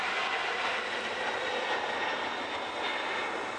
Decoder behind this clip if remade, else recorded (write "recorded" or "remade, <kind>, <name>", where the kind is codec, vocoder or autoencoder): recorded